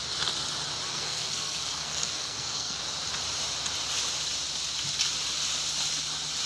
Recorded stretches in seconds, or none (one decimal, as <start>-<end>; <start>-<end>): 0.0-0.9; 2.8-6.5